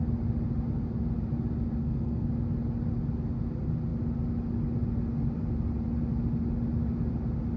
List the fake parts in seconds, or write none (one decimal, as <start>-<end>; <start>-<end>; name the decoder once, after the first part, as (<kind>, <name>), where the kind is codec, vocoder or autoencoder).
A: 1.8-2.3 (codec, SNAC)